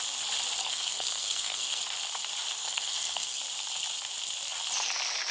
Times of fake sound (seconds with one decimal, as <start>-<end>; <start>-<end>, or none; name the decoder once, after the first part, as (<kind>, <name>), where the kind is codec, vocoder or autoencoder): 0.6-1.8 (codec, SNAC); 2.6-3.4